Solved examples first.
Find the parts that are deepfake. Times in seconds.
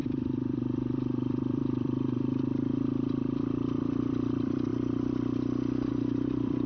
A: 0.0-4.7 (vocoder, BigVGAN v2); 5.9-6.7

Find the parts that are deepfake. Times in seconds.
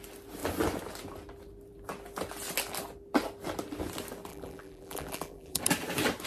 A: 4.3-5.6 (vocoder, BigVGAN v2)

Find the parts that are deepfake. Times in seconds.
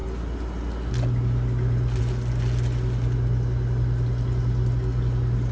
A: none